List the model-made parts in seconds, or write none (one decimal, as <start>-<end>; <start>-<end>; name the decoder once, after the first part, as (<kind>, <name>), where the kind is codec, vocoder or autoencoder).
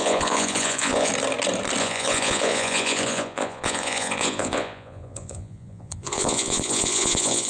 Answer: 0.0-1.1 (vocoder, Vocos); 1.8-7.5